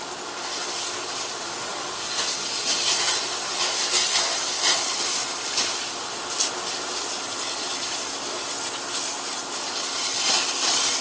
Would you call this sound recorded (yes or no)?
yes